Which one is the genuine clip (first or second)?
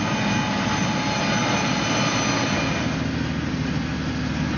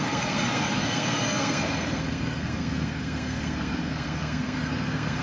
first